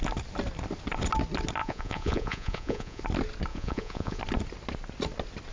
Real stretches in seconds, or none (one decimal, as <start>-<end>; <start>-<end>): 0.0-1.6; 3.0-3.5; 4.2-5.5